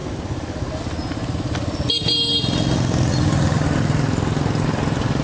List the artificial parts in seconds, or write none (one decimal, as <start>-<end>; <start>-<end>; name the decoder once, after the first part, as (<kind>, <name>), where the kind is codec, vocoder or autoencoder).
none